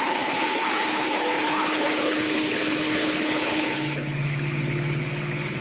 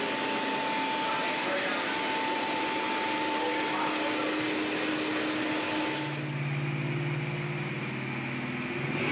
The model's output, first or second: first